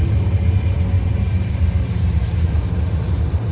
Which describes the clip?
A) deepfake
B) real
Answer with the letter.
A